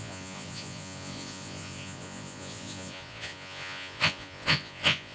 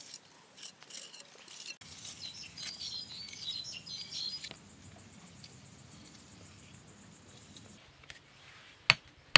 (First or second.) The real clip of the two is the second